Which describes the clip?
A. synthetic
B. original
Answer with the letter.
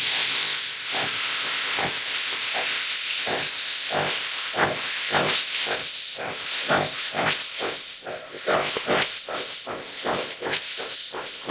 A